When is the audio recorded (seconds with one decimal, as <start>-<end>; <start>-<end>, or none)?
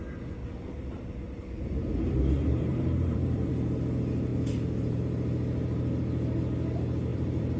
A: 0.0-0.4; 3.5-4.3; 5.0-7.1